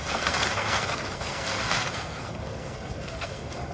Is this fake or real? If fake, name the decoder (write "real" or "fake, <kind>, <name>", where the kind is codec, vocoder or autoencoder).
fake, codec, SNAC